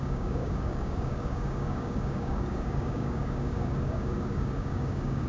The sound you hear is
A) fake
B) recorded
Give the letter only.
A